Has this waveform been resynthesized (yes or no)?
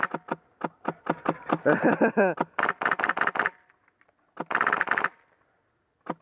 no